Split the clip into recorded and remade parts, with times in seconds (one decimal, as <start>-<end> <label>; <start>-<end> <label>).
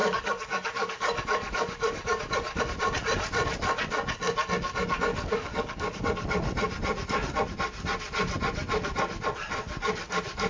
0.0-2.6 remade; 2.6-5.1 recorded; 5.1-6.0 remade; 6.0-10.5 recorded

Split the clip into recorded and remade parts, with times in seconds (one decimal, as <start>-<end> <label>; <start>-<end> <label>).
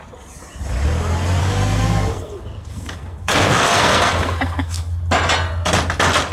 0.0-1.4 recorded; 1.4-5.0 remade; 5.0-6.3 recorded